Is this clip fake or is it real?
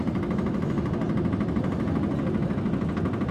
real